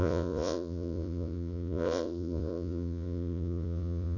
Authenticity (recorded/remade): remade